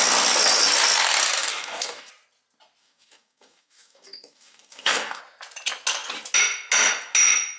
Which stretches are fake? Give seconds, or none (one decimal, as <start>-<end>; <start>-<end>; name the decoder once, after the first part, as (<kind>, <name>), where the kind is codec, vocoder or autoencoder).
1.4-2.1 (codec, DAC); 2.8-5.2